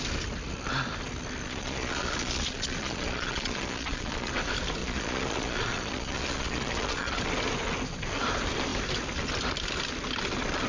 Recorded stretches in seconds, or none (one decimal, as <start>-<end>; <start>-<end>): 0.0-1.4; 4.3-4.8; 7.2-10.7